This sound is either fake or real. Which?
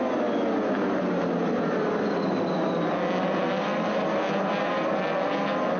real